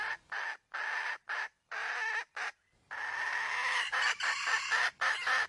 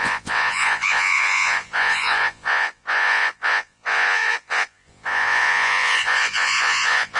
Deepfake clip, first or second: second